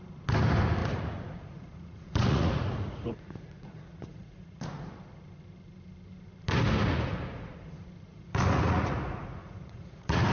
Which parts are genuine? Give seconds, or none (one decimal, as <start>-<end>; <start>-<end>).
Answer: 0.0-0.8; 4.9-6.8; 7.7-8.1